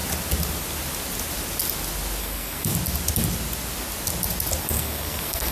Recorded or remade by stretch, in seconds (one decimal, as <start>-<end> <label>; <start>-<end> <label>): 0.0-2.2 recorded; 2.2-2.7 remade; 2.7-4.6 recorded; 4.6-5.5 remade